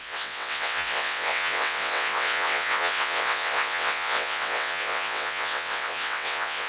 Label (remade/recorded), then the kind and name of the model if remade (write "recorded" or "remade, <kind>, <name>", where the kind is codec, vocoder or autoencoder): remade, vocoder, WaveNeXt